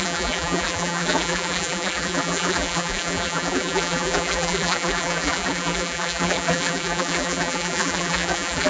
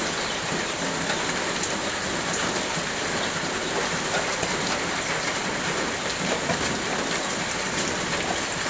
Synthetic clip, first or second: first